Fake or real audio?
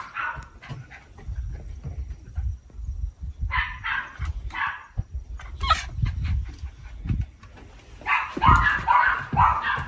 real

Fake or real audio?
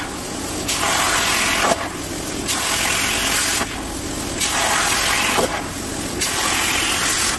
real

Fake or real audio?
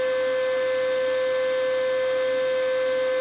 real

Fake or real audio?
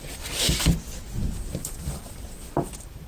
real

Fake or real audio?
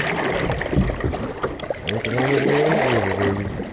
real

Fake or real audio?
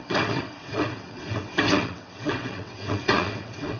fake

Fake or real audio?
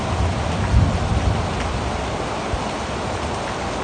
real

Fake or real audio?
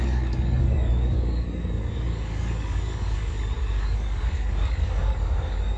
fake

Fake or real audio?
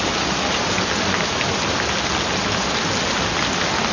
real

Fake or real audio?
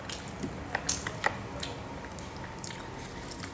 real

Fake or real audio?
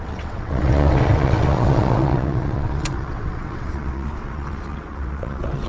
fake